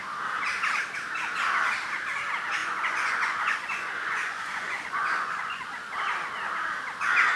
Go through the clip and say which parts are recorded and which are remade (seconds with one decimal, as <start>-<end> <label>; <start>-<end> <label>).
0.0-2.6 recorded; 2.6-5.7 remade; 5.7-7.4 recorded